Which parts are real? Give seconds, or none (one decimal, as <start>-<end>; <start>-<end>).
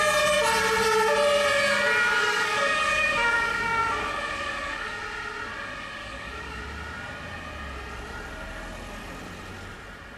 0.0-2.2; 5.0-6.0; 6.6-10.2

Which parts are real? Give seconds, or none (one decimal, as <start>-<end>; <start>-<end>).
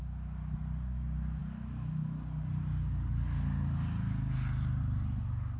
0.0-5.6